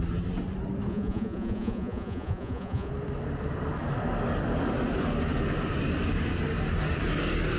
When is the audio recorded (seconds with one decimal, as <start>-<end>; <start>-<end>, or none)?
0.0-0.9; 2.9-7.6